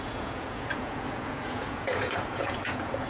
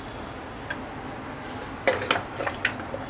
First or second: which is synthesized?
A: first